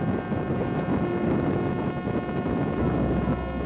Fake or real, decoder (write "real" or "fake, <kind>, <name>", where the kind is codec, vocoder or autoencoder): real